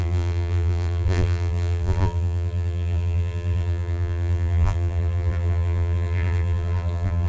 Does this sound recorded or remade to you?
remade